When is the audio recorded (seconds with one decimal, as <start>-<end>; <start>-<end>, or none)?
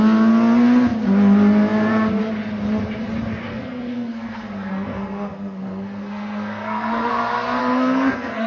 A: 0.0-3.5; 7.1-7.6